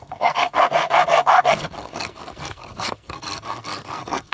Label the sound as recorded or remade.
remade